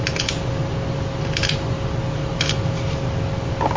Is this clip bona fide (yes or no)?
yes